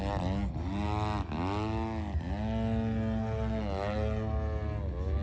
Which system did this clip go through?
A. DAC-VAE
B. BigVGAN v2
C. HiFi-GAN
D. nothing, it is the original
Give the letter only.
D